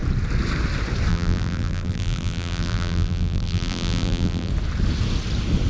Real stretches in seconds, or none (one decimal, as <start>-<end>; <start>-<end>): 0.0-1.1; 4.5-5.7